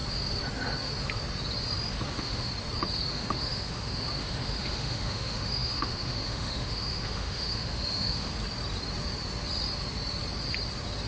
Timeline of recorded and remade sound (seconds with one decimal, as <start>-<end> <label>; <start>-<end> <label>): 0.0-2.1 recorded; 2.1-2.5 remade; 2.5-3.1 recorded; 3.1-8.3 remade; 8.3-11.1 recorded